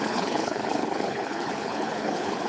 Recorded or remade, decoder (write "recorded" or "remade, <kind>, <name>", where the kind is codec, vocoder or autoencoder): remade, codec, HILCodec